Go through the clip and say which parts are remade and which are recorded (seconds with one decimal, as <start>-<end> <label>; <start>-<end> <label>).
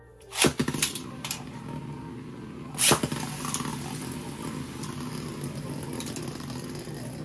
0.0-0.6 recorded; 0.6-1.8 remade; 1.8-7.2 recorded